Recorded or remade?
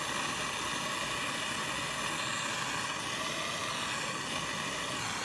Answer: recorded